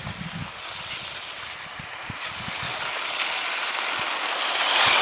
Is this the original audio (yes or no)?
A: yes